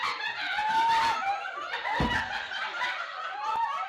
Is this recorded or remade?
recorded